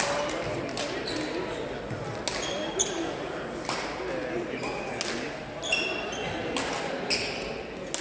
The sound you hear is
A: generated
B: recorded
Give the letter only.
B